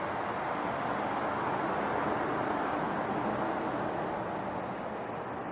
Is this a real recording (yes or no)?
yes